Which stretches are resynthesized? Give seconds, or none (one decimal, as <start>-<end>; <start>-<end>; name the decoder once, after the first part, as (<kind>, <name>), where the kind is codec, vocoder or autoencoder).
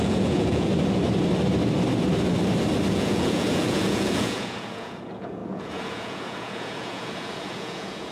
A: 0.0-0.7 (vocoder, Vocos); 2.9-8.1